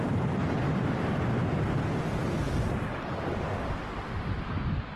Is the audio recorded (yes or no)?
yes